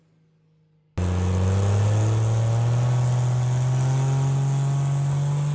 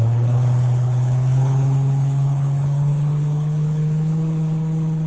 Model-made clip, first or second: second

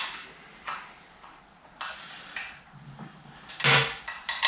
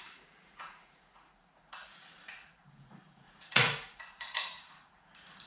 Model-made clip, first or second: second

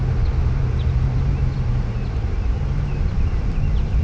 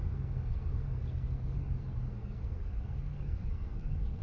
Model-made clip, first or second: second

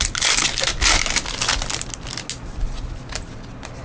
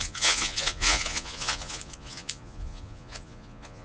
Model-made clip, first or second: second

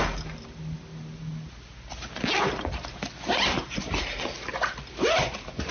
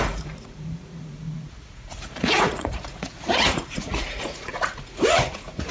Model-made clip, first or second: second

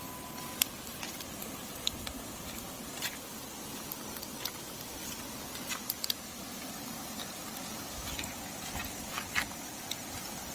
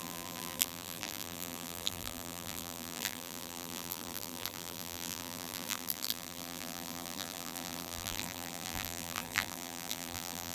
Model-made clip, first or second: second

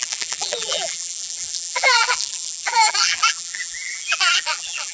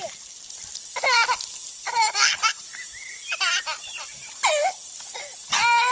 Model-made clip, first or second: first